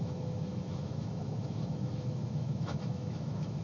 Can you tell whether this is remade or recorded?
remade